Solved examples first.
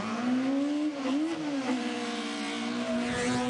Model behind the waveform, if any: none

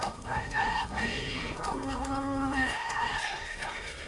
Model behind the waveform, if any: codec, SNAC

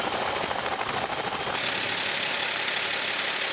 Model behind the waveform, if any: none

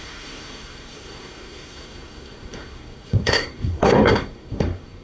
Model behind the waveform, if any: codec, SNAC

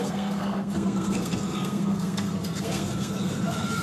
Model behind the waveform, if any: codec, SNAC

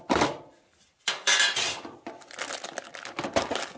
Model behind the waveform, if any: none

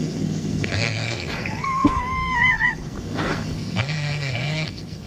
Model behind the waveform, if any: codec, SNAC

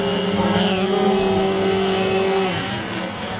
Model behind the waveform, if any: codec, SNAC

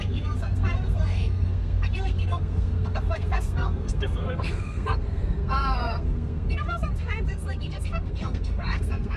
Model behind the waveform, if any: codec, SNAC